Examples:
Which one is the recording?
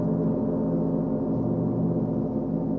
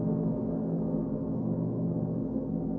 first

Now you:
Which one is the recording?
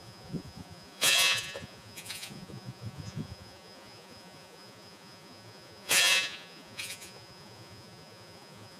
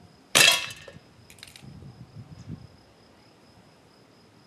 second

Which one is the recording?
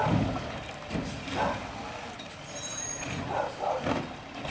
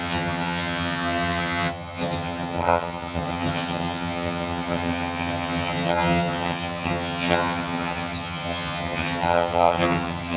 first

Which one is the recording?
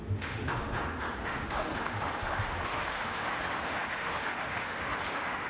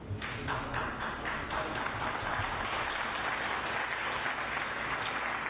second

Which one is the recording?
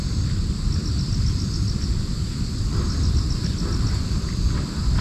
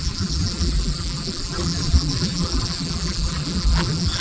first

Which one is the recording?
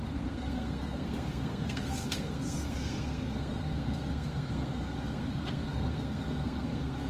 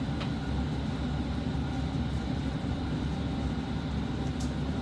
second